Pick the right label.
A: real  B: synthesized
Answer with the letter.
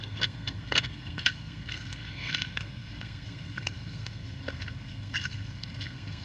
B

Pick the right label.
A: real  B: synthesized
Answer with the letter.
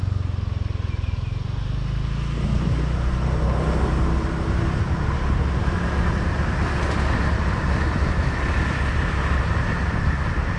A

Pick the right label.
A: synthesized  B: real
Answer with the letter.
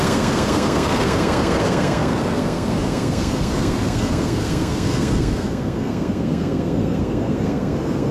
A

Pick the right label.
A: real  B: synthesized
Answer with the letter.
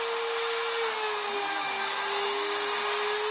A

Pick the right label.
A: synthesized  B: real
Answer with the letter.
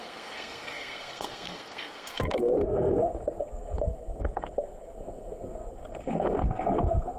A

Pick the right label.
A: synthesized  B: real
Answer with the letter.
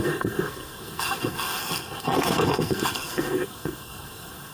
A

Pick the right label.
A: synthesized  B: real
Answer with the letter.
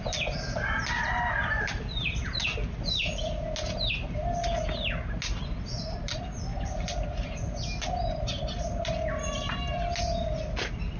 B